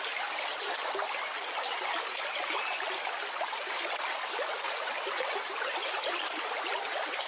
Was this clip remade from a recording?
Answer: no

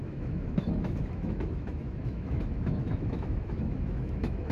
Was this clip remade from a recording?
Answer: yes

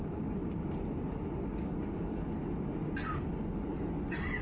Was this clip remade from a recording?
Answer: no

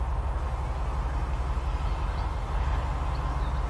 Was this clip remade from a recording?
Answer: no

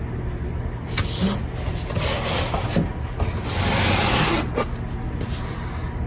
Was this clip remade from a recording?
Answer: no